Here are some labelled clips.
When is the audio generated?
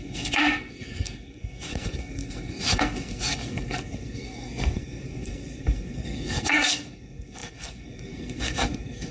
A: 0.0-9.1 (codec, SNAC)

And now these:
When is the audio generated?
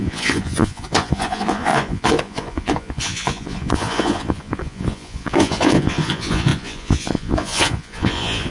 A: 0.0-8.5 (vocoder, Vocos)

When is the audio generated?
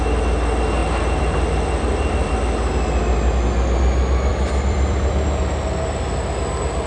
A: 0.8-2.3 (vocoder, BigVGAN v2); 4.3-5.1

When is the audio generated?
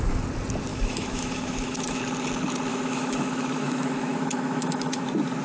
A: 0.7-2.0 (autoencoder, DAC-VAE); 2.7-5.0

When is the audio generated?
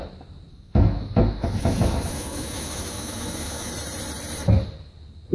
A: 0.5-3.7 (autoencoder, DAC-VAE)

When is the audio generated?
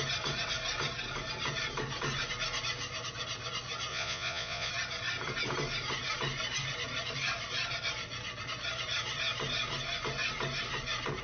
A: 3.9-4.7 (vocoder, Vocos)